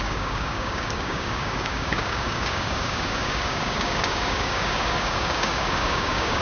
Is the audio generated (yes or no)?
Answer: yes